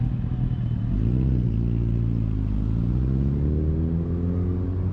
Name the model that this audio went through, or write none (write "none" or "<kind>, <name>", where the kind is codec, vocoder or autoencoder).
none